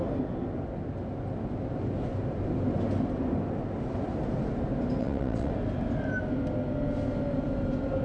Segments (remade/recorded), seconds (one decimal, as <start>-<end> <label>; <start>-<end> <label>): 0.0-5.0 recorded; 5.0-5.5 remade; 5.5-8.0 recorded